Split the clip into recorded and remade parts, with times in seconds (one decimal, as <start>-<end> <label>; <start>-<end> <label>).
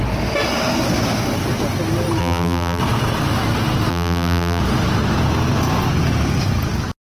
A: 0.0-2.2 recorded; 2.2-2.8 remade; 2.8-3.9 recorded; 3.9-4.6 remade; 4.6-7.0 recorded